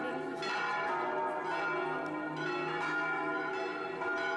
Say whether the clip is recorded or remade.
recorded